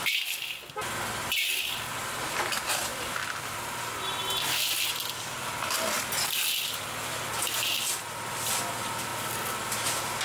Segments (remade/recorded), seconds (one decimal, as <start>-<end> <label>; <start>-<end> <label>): 0.0-10.2 recorded